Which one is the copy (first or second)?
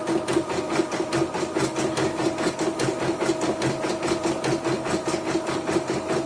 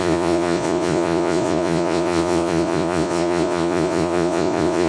second